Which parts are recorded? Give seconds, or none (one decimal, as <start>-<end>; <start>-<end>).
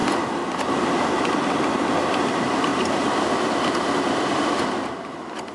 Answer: 0.0-5.5